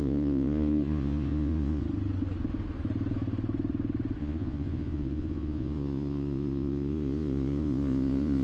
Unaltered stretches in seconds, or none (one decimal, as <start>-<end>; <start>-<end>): 1.8-4.2